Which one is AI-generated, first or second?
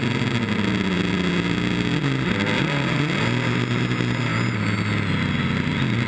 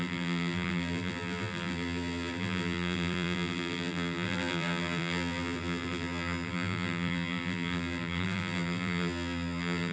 second